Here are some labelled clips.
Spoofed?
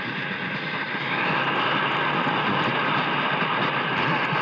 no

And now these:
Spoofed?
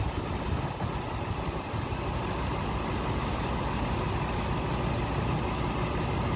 no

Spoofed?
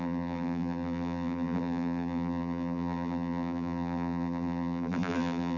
yes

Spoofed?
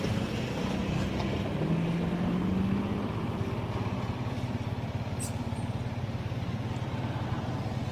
no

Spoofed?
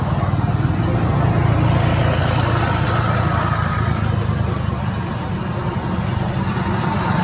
no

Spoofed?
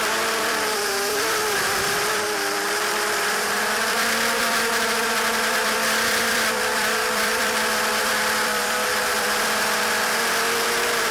yes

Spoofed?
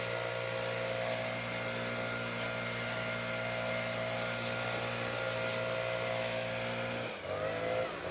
no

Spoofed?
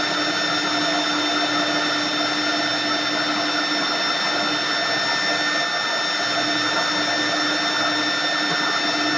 no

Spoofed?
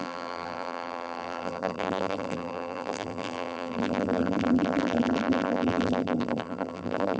yes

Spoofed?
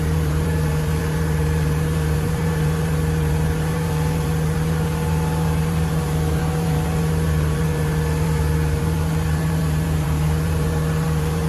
yes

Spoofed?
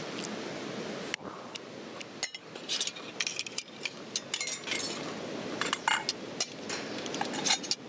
no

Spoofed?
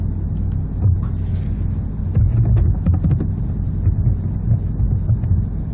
no